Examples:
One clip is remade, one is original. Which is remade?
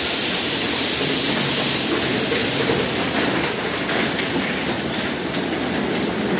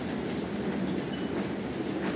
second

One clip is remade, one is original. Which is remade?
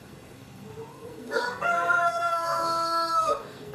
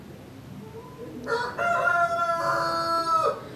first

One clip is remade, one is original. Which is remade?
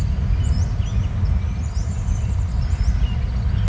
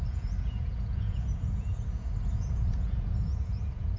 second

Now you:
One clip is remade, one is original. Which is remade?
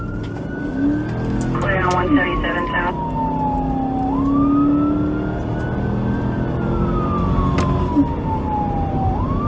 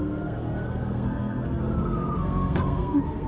second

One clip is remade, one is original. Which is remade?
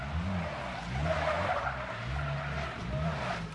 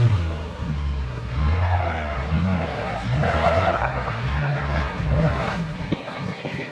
second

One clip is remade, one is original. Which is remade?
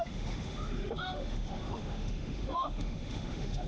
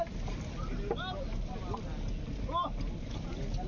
first